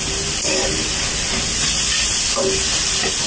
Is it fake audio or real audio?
real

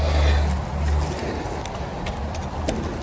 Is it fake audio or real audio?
real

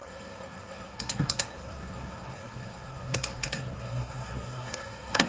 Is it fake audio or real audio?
fake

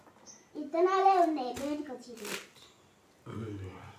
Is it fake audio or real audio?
real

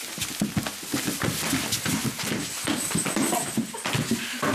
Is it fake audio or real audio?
real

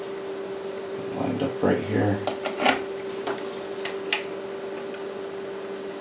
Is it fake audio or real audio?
real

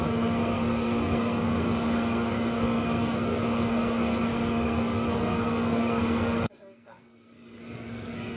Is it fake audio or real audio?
fake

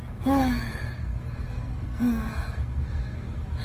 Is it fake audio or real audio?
fake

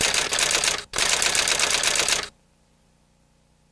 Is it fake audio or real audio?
real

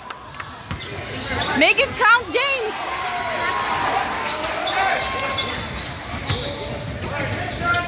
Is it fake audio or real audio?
real